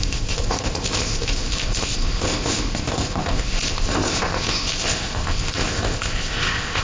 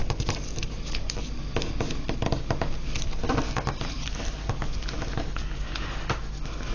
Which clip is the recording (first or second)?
second